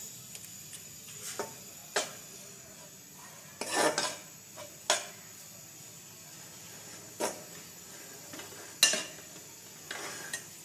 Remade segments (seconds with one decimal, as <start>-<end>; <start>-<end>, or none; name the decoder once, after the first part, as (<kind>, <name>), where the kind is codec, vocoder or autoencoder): none